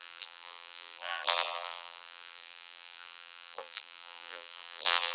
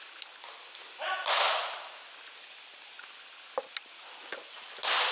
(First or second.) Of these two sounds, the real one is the second